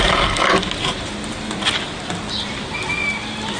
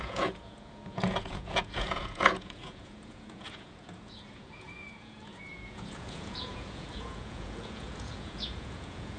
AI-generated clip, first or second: second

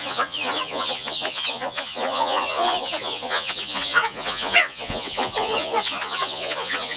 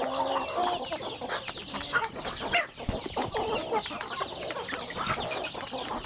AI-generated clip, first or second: first